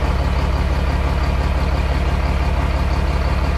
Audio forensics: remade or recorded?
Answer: recorded